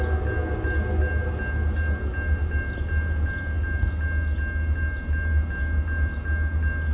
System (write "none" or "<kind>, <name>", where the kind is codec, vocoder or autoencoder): none